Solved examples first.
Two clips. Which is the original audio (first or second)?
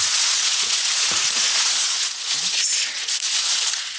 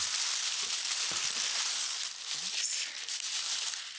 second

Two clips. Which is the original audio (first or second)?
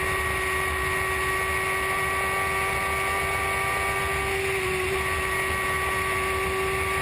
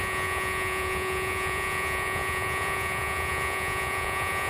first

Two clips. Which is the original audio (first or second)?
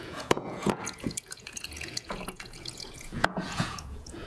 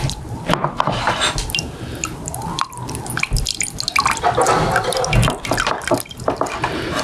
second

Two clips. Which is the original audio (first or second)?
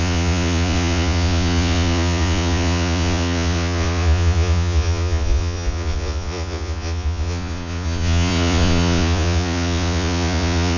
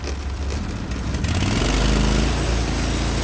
second